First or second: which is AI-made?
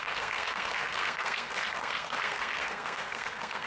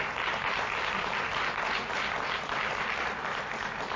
first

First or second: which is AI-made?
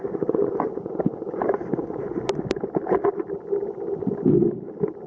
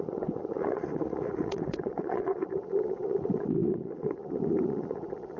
second